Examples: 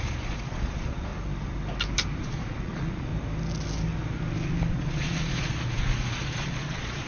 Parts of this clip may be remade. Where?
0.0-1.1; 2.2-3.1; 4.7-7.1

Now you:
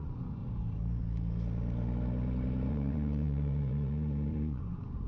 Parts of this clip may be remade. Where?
0.0-0.4; 2.7-5.1

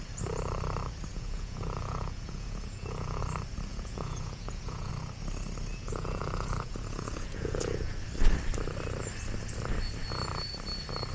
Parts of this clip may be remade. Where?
1.1-3.2; 3.7-4.9; 5.7-8.0

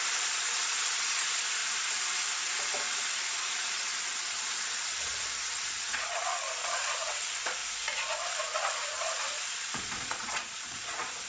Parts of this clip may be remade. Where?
0.0-1.6; 3.2-7.6; 8.4-11.3

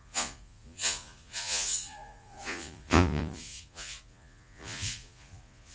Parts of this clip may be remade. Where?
0.0-5.7

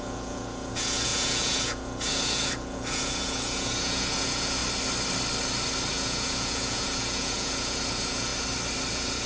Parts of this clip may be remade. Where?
0.0-4.6; 5.9-8.3; 8.9-9.3